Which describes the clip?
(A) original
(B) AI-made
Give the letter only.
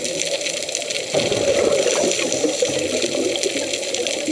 A